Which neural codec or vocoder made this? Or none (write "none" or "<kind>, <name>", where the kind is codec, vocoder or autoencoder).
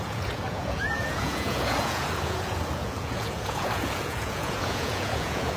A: vocoder, Vocos